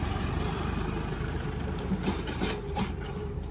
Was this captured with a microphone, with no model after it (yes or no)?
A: no